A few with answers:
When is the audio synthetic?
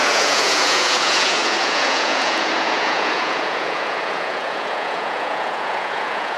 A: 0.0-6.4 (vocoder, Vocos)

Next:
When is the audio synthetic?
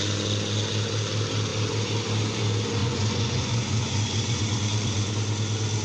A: 2.8-5.1 (vocoder, Vocos)